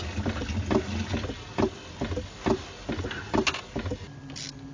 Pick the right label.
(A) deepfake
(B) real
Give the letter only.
B